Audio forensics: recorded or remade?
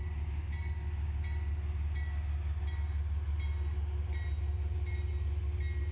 recorded